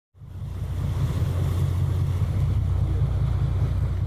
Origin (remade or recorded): recorded